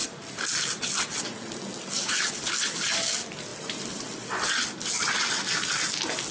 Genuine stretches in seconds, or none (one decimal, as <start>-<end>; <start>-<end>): 0.0-3.5; 4.5-6.3

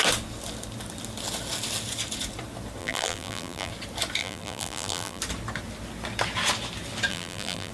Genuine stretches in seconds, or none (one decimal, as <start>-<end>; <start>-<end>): 0.0-2.8; 3.7-4.2; 5.2-7.1

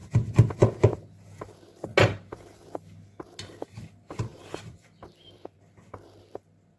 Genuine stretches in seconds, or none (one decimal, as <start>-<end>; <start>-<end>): 0.0-4.3; 6.3-6.8

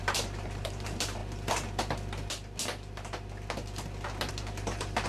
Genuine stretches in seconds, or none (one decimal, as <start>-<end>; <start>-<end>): 1.2-4.3

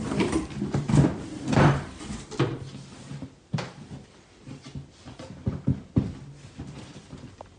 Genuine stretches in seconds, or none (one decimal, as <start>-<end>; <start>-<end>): 5.7-6.6

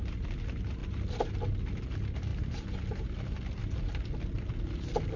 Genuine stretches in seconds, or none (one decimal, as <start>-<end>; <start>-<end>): 0.0-0.8; 1.3-2.3; 2.8-3.6; 4.4-5.2

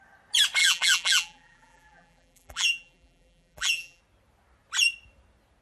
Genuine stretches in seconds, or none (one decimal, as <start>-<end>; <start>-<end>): 0.0-0.6; 4.0-5.6